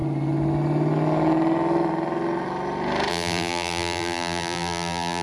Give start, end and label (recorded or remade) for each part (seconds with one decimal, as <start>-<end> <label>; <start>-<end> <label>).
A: 0.0-3.1 recorded; 3.1-5.2 remade